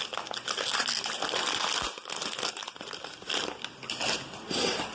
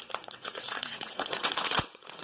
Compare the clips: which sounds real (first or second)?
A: first